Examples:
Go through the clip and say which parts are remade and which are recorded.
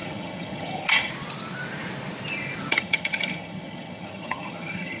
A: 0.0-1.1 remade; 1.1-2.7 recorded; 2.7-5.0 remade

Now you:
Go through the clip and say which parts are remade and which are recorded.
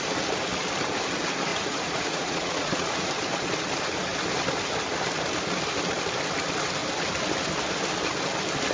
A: 0.0-1.5 recorded; 1.5-3.1 remade; 3.1-8.7 recorded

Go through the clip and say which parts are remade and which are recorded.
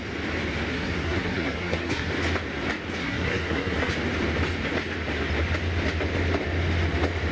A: 0.0-0.7 recorded; 0.7-2.1 remade; 2.1-3.0 recorded; 3.0-3.9 remade; 3.9-7.3 recorded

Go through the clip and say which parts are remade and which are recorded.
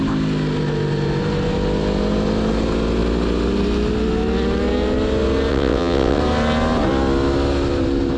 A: 0.0-5.5 recorded; 5.5-6.2 remade; 6.2-8.2 recorded